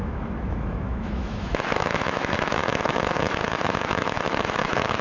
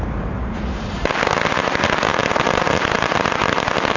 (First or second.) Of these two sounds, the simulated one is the first